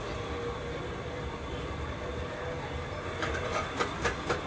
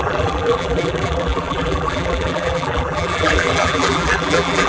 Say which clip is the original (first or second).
first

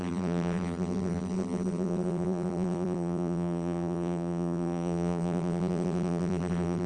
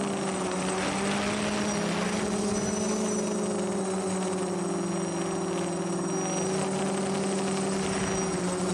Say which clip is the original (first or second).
second